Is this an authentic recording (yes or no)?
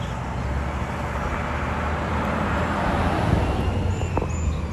yes